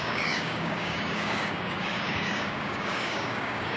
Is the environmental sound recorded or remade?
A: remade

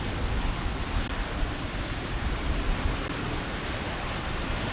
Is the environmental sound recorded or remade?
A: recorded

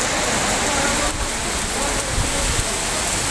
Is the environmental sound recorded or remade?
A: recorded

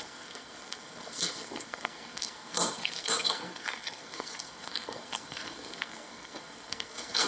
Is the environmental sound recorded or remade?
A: remade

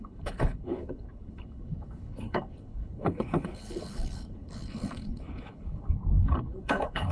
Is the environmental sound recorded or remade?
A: remade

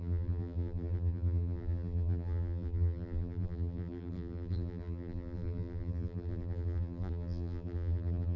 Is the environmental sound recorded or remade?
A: remade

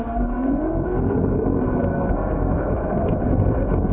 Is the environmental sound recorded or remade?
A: remade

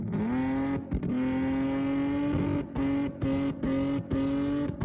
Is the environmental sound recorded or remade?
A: recorded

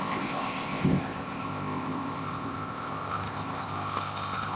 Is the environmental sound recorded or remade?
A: remade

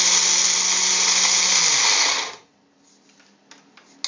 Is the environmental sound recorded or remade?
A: recorded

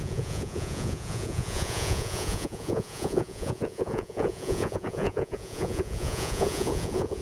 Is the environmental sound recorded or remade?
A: remade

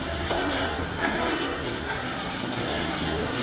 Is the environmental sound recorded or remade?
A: remade